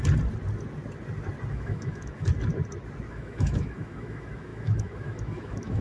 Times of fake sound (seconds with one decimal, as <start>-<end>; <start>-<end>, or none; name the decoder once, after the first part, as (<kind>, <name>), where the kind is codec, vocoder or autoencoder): 1.5-2.3 (autoencoder, DAC-VAE); 3.1-5.8

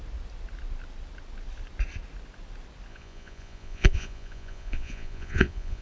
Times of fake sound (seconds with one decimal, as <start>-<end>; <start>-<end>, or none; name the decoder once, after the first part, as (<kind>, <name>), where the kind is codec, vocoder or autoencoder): 2.9-5.8 (vocoder, Vocos)